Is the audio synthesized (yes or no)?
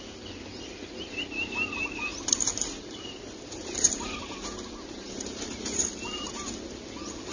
no